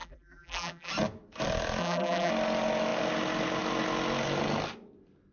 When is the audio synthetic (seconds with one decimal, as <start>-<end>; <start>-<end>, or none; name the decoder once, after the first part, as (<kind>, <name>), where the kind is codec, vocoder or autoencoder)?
0.0-0.9 (vocoder, BigVGAN v2); 1.8-2.3